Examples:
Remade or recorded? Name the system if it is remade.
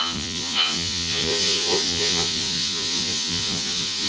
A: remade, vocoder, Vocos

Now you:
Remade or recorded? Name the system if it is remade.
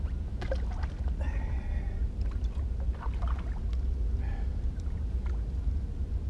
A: recorded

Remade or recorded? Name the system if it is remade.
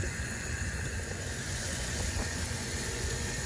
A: remade, vocoder, Vocos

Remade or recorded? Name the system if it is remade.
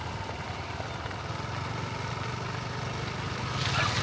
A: recorded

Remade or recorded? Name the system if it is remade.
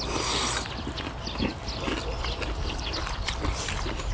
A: recorded